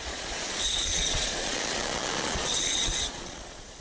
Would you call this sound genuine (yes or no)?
no